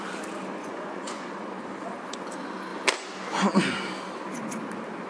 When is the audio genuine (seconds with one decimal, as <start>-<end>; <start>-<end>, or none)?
0.0-0.6; 1.3-5.1